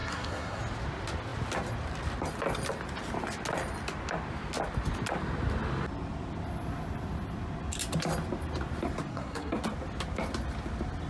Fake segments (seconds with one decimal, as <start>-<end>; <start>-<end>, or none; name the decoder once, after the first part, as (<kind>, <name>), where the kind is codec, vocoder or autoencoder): 0.0-0.6 (codec, SNAC); 9.1-9.6